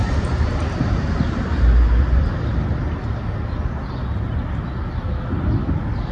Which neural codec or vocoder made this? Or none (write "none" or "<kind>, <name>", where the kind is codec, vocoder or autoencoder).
none